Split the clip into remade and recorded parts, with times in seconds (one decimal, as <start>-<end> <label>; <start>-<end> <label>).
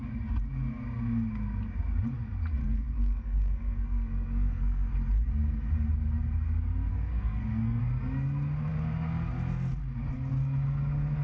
0.0-2.6 recorded; 2.6-4.9 remade; 4.9-6.9 recorded; 6.9-7.8 remade; 7.8-11.2 recorded